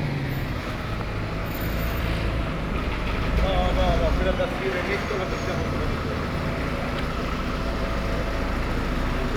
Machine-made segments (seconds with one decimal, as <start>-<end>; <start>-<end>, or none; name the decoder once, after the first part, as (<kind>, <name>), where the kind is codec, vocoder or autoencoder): 0.4-0.9 (autoencoder, DAC-VAE); 1.4-2.0